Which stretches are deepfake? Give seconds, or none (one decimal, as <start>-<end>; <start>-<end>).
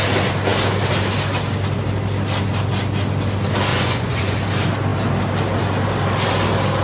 3.7-4.4